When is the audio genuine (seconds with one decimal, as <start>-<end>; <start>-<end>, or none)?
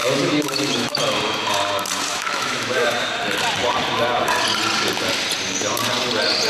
1.0-2.1; 3.1-6.5